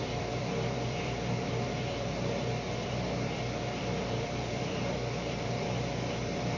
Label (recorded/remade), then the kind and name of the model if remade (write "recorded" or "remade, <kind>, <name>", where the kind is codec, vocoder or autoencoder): remade, vocoder, BigVGAN v2